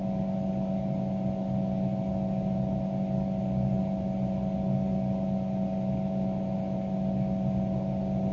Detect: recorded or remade recorded